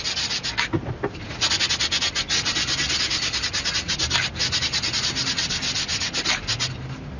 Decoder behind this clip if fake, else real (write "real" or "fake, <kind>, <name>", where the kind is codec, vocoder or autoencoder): real